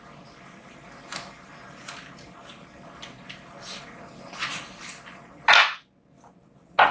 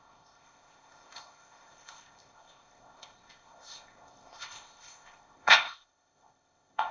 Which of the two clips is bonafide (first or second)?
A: first